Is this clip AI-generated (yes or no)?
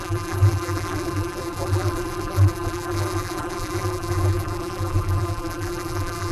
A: yes